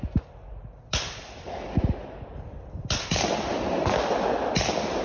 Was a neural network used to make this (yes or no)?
no